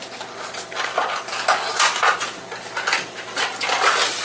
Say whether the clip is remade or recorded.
recorded